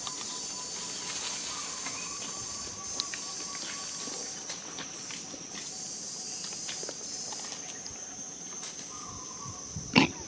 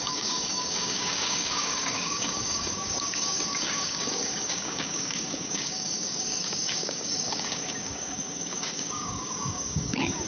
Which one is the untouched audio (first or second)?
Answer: first